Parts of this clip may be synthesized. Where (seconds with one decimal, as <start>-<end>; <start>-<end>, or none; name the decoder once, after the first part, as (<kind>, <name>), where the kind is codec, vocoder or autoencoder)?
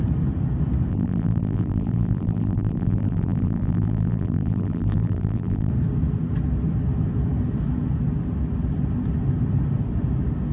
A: 0.9-5.7 (vocoder, BigVGAN v2)